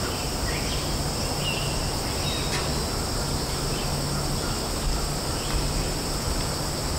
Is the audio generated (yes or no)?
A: no